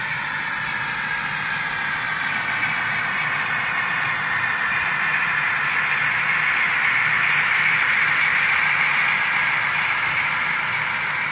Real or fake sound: real